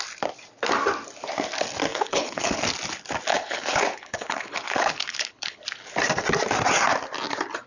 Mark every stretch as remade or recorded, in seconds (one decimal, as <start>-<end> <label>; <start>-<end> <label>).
0.0-1.9 recorded; 1.9-2.6 remade; 2.6-3.3 recorded; 3.3-5.6 remade; 5.6-7.7 recorded